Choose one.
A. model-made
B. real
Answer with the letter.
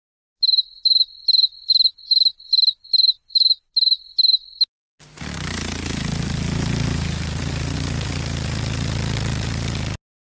B